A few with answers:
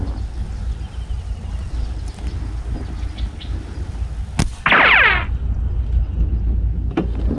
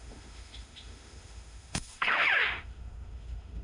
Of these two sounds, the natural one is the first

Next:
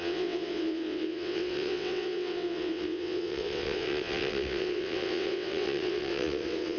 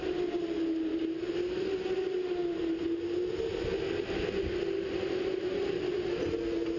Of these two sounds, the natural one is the second